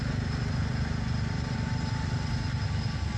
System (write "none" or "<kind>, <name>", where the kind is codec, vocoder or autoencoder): none